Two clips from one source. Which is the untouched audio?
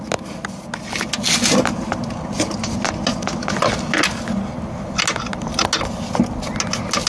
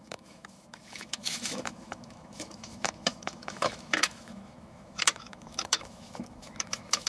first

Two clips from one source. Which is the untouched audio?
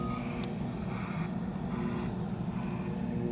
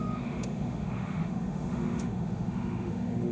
first